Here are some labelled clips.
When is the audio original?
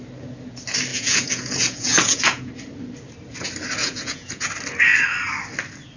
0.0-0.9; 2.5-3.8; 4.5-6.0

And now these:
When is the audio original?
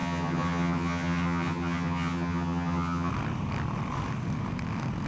3.1-5.1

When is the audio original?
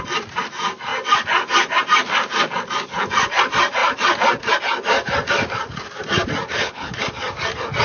0.0-6.5; 7.0-7.8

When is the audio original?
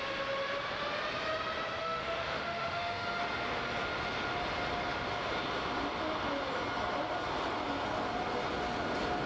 0.0-1.8; 3.2-9.3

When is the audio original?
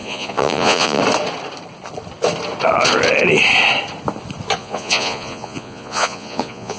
1.0-4.6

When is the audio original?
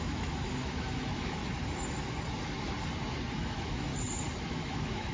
1.4-3.3; 3.9-4.5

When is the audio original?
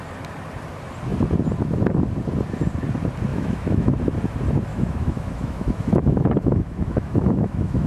0.0-3.3; 3.9-4.7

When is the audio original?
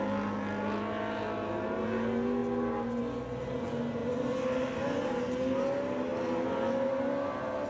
0.0-7.7